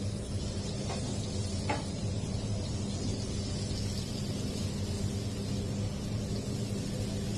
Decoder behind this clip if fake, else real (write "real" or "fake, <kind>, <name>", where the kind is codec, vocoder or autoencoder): real